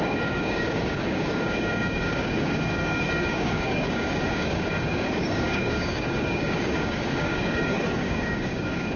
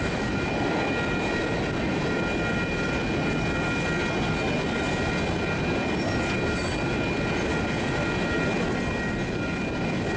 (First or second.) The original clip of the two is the second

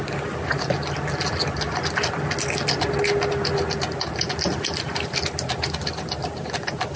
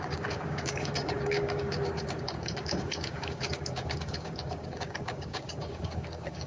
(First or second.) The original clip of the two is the first